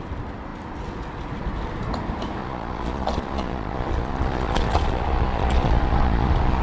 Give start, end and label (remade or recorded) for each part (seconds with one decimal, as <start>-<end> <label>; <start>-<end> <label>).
0.0-2.4 recorded; 2.4-6.6 remade